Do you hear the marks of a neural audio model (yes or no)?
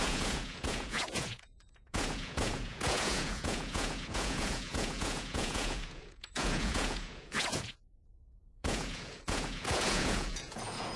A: yes